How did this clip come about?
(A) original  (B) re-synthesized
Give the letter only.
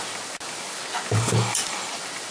A